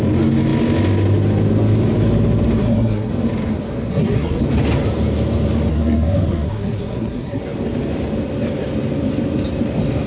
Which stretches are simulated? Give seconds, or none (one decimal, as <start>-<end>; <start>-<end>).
2.6-3.1; 3.9-4.4; 5.7-7.4